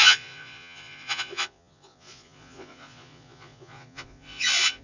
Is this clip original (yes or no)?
no